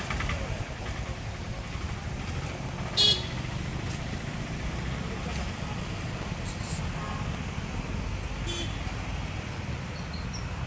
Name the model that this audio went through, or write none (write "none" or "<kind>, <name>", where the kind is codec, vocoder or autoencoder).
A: none